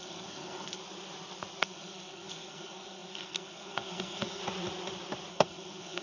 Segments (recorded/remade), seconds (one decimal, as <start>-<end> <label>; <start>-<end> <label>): 0.0-0.8 remade; 0.8-1.6 recorded; 1.6-4.4 remade; 4.4-5.3 recorded; 5.3-6.0 remade